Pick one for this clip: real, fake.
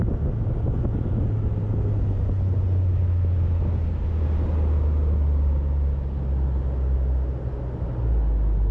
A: real